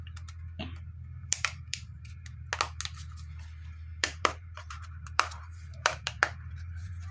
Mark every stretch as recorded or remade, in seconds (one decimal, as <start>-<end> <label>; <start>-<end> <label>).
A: 0.0-1.2 recorded; 1.2-2.5 remade; 2.5-3.9 recorded; 3.9-7.1 remade